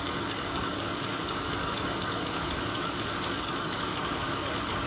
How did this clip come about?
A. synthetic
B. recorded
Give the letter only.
A